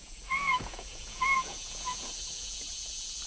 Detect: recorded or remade remade